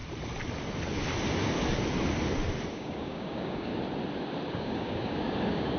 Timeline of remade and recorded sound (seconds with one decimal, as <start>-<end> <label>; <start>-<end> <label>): 0.0-2.7 recorded; 2.7-3.7 remade; 3.7-4.5 recorded; 4.5-5.8 remade